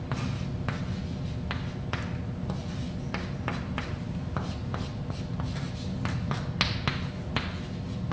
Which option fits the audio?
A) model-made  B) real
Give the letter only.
B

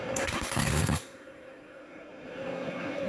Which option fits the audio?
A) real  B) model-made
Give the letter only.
B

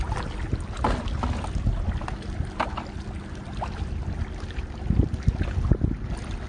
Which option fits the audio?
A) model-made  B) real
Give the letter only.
B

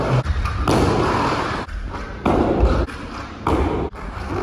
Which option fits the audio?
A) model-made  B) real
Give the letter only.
B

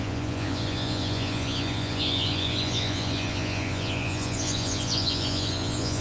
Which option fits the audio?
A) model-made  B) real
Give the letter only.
A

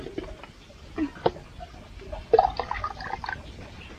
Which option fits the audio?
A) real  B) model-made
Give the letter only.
A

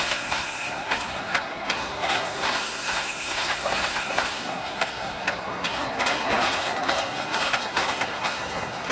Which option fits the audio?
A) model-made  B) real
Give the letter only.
A